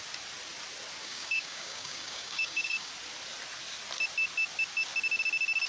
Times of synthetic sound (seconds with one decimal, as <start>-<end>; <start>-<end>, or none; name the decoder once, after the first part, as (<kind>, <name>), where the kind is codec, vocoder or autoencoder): 1.0-2.9 (codec, DAC)